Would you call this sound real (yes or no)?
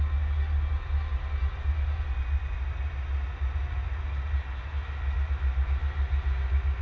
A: yes